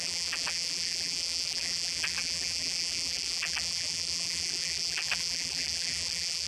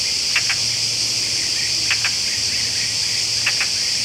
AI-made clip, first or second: first